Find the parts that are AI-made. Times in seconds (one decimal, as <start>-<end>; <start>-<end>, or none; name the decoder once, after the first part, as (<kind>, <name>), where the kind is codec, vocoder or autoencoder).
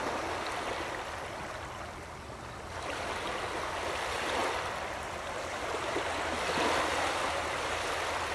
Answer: none